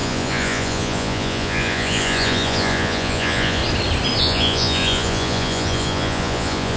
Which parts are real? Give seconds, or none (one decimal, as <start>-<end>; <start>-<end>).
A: 3.6-4.2